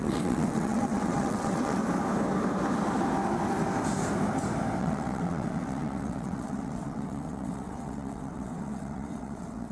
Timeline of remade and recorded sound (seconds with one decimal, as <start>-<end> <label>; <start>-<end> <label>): 0.0-1.8 remade; 1.8-4.8 recorded; 4.8-9.7 remade